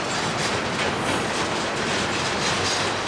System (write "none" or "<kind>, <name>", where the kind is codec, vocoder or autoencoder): none